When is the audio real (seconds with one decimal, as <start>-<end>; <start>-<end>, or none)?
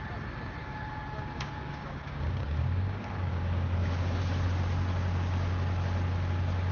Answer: 0.0-0.6; 4.2-6.7